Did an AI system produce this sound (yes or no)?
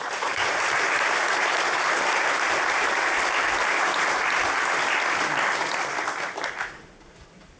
no